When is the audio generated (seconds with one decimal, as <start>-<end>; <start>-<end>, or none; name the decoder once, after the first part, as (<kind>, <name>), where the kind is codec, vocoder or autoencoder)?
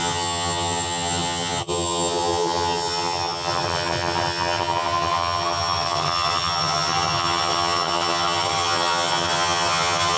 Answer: 0.0-10.2 (vocoder, HiFi-GAN)